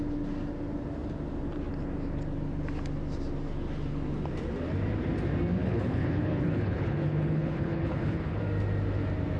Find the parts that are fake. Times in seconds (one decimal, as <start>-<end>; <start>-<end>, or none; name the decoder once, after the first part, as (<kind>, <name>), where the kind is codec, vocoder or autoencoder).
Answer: 5.6-8.4 (codec, HILCodec)